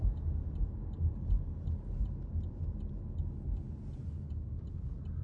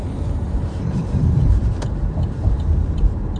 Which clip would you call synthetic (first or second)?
second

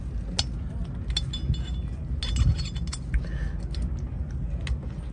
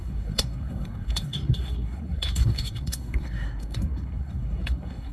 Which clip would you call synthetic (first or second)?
second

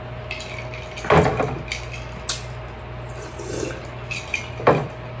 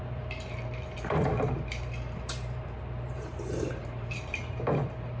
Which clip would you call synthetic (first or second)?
second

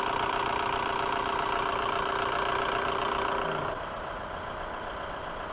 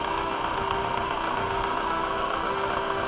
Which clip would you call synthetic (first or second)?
second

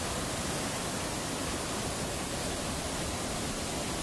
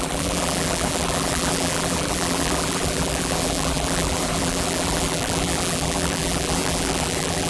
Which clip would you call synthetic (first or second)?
second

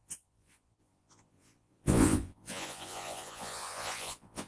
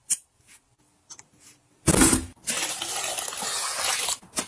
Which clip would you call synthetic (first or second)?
first